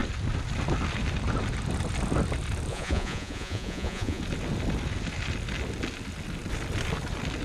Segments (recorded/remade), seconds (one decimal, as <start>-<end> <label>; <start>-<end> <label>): 0.0-2.7 recorded; 2.7-4.2 remade; 4.2-7.4 recorded